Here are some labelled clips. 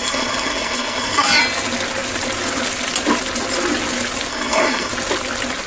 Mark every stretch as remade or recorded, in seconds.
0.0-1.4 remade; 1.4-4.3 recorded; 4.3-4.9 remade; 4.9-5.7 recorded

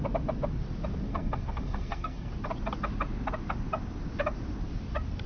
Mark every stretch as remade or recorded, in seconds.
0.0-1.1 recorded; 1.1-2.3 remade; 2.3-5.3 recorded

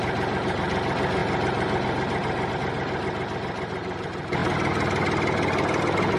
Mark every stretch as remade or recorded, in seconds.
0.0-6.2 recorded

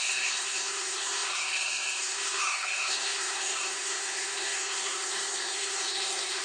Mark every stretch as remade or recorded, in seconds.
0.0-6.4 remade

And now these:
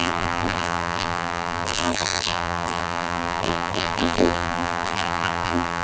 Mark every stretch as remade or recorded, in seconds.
0.0-5.8 remade